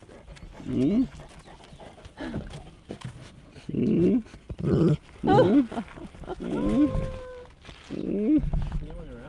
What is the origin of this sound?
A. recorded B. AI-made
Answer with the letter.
A